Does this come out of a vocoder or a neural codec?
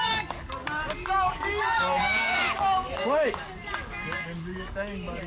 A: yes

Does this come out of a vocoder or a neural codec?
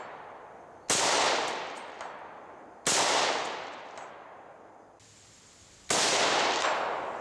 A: no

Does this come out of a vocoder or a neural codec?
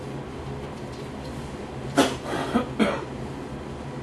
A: no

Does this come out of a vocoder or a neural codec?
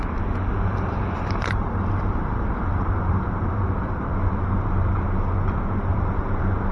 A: yes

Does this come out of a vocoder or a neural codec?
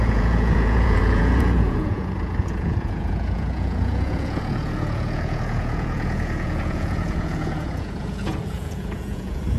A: yes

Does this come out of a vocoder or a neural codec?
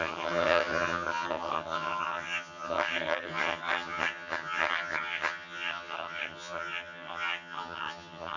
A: yes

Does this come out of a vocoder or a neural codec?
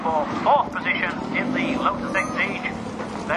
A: no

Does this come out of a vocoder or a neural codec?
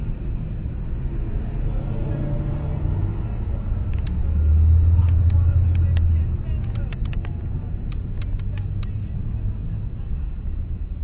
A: no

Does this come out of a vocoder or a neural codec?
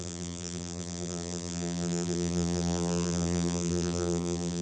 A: yes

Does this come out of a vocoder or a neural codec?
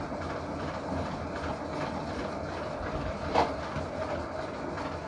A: no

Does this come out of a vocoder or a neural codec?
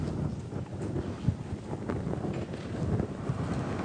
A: no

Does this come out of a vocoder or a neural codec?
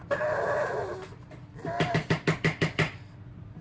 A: no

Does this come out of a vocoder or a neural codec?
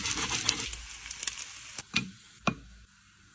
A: no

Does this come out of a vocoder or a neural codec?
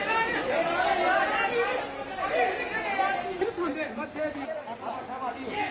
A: no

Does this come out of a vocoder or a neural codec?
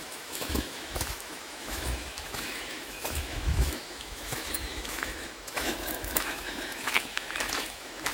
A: yes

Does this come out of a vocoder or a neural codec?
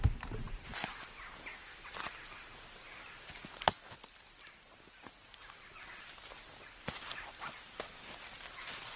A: no